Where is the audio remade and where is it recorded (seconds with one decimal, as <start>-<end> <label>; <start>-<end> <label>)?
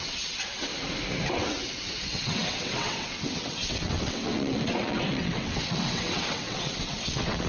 0.0-0.7 remade; 0.7-1.3 recorded; 1.3-7.5 remade